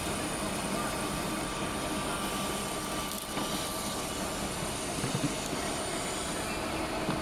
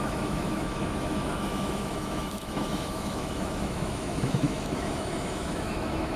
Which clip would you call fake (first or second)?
second